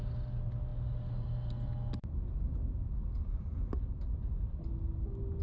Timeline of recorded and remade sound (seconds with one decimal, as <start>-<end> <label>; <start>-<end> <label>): 0.0-5.4 recorded